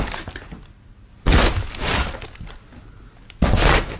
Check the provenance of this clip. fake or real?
real